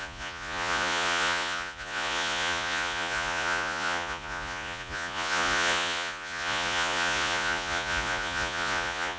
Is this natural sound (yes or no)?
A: no